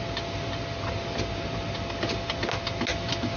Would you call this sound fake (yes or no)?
no